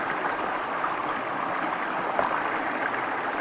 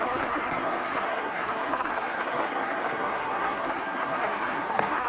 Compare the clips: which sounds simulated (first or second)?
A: second